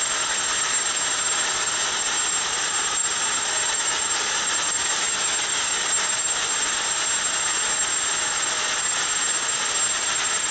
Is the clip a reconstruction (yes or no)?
yes